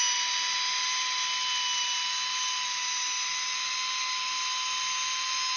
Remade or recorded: recorded